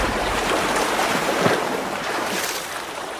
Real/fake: fake